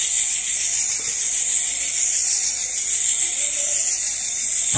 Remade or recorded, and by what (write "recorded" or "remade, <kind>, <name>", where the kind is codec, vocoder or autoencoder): recorded